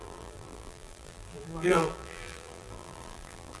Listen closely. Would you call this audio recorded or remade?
remade